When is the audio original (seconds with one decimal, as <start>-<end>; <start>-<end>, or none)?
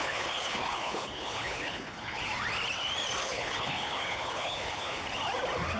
2.2-3.2; 5.0-5.8